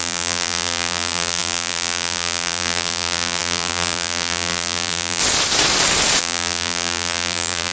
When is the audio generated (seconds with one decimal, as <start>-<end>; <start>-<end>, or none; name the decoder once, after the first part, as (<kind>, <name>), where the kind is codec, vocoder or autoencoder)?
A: 0.0-5.2 (vocoder, BigVGAN v2); 6.2-7.7